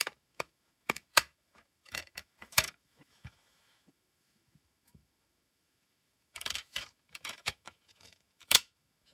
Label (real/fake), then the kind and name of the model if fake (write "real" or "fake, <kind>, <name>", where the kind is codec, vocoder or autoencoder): fake, autoencoder, DAC-VAE